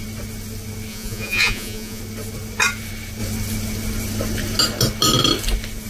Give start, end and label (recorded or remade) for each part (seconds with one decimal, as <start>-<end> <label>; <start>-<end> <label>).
0.0-0.9 recorded; 0.9-2.0 remade; 2.0-5.9 recorded